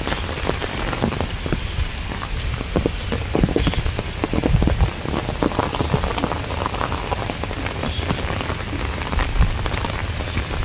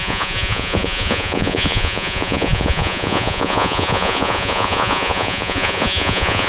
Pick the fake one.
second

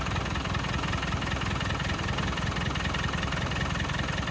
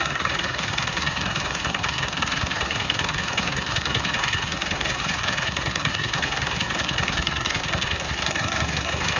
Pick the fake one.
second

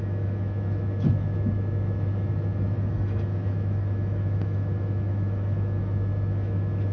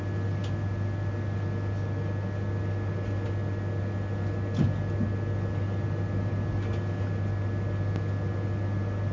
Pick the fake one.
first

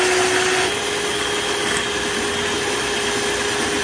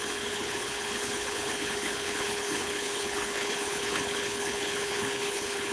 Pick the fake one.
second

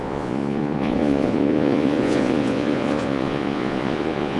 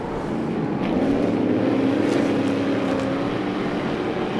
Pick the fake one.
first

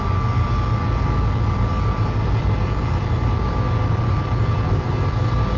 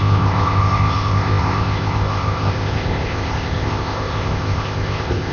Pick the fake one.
second